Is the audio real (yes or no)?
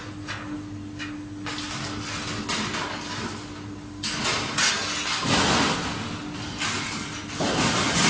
yes